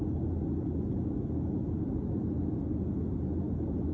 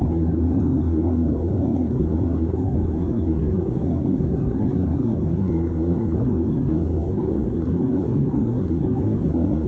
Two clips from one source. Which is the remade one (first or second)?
second